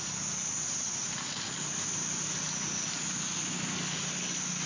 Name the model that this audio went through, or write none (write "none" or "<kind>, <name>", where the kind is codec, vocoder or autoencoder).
none